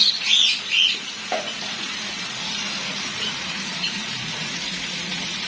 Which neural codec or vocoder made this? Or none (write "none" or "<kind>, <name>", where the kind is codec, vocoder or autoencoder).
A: vocoder, Vocos